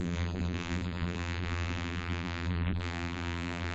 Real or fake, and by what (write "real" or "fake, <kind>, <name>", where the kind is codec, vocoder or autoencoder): fake, vocoder, BigVGAN v2